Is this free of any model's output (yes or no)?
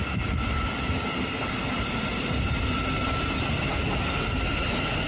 yes